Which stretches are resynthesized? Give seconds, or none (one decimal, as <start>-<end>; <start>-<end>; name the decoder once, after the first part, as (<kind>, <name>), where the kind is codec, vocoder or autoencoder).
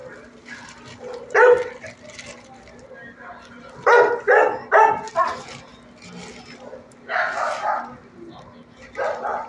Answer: none